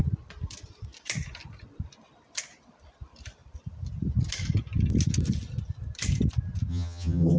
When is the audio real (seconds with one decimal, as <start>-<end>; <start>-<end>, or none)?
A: 0.0-6.7

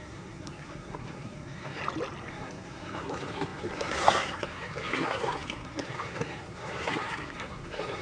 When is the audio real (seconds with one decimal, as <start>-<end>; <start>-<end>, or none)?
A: 1.8-2.3

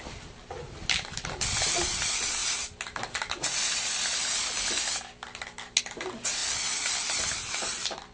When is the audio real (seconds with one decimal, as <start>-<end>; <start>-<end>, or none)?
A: 0.0-8.1

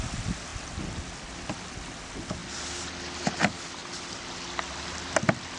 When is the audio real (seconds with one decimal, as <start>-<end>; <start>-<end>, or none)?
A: 0.0-5.6